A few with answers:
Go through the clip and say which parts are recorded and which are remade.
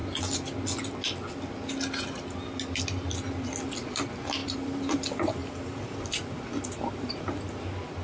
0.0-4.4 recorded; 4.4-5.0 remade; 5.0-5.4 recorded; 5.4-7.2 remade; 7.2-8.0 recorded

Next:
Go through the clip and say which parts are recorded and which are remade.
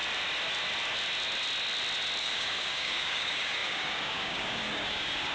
0.0-2.2 recorded; 2.2-5.3 remade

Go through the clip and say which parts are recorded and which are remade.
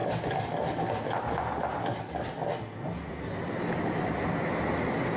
0.0-5.2 recorded